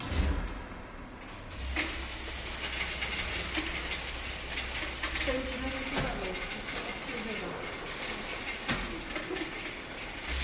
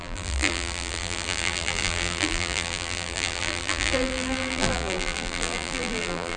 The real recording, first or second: first